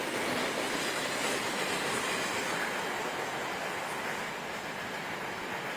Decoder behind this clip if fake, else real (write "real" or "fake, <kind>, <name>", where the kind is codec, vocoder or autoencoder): real